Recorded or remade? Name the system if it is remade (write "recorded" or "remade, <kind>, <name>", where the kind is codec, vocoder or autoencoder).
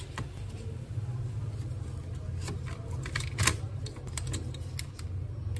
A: recorded